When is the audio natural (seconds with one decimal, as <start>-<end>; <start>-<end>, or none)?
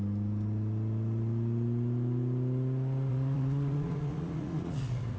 0.0-3.1